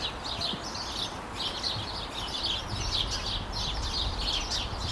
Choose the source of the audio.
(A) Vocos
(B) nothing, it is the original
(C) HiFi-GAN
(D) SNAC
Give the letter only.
B